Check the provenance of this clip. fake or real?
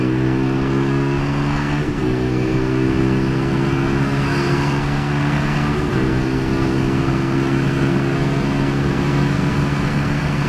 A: fake